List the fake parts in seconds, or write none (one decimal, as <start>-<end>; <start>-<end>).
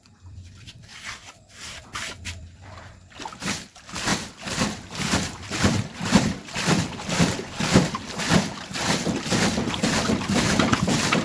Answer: 0.0-11.2